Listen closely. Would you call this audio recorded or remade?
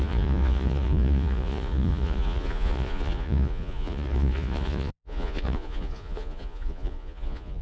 remade